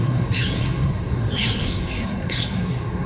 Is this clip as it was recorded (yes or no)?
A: no